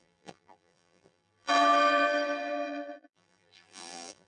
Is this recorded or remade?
remade